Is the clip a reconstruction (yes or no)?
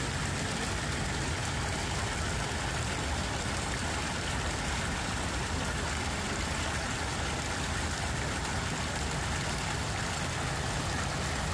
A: no